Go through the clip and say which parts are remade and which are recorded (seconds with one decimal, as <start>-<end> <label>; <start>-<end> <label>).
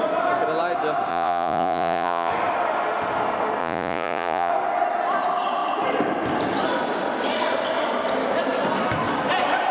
0.0-1.1 recorded; 1.1-2.3 remade; 2.3-3.6 recorded; 3.6-4.5 remade; 4.5-9.7 recorded